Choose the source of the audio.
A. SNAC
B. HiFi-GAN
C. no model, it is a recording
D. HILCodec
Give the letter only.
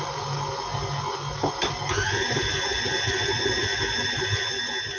C